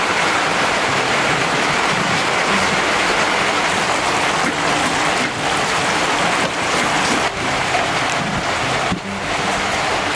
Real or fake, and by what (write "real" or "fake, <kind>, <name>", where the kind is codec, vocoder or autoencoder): fake, vocoder, BigVGAN v2